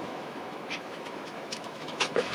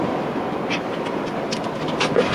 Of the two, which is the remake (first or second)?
first